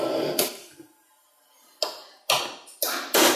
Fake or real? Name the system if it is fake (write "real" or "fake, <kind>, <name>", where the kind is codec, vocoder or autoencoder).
real